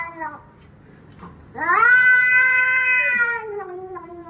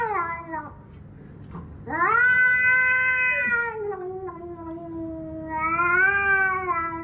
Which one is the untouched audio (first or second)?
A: second